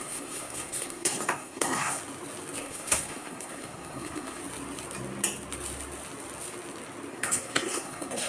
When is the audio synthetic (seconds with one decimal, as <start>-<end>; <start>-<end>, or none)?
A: 0.0-2.0; 2.6-4.4; 7.1-8.3